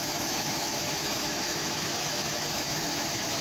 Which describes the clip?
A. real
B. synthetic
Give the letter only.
B